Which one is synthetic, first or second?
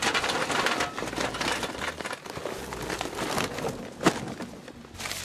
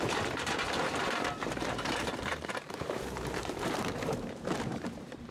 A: second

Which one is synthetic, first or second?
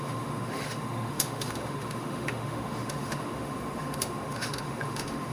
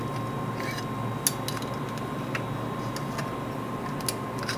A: first